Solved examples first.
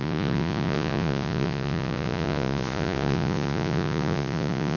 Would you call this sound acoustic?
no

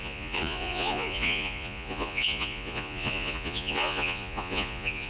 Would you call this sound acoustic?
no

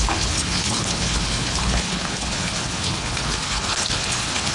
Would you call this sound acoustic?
no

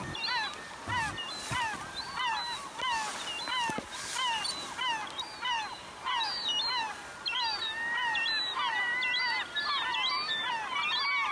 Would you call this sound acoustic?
yes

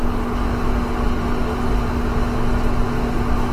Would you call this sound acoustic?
yes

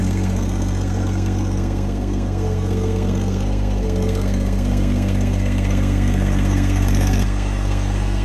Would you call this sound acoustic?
no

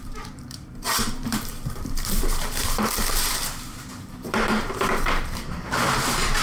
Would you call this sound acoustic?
no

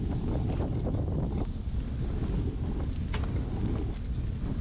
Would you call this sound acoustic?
yes